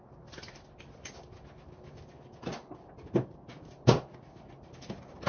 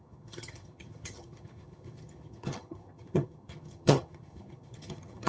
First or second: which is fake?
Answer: second